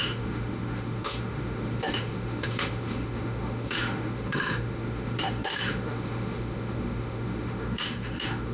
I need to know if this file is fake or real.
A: fake